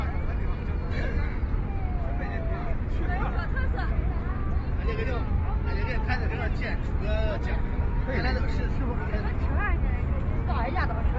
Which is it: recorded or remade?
recorded